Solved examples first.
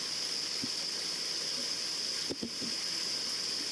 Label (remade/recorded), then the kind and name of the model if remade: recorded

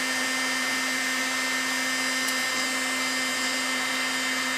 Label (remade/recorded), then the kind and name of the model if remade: recorded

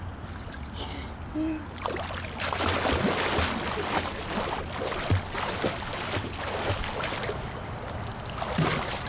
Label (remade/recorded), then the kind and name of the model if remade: recorded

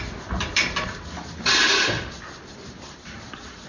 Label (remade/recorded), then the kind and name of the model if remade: remade, vocoder, BigVGAN v2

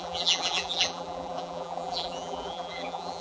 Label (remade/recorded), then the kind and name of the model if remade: remade, vocoder, BigVGAN v2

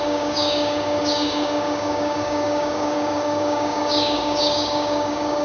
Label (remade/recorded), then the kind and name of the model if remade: remade, codec, DAC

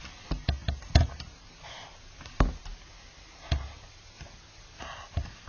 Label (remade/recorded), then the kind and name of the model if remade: recorded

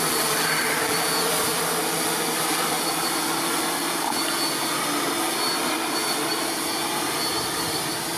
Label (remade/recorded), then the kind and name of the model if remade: recorded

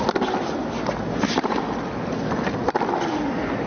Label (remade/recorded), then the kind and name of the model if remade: recorded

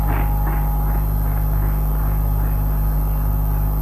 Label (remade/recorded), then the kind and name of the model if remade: recorded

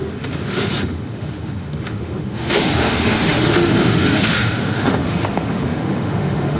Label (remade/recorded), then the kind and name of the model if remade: remade, autoencoder, DAC-VAE